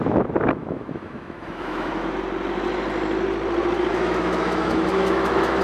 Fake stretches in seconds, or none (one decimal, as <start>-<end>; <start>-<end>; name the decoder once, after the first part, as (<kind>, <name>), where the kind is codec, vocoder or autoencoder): 0.6-1.9 (autoencoder, DAC-VAE); 3.9-5.6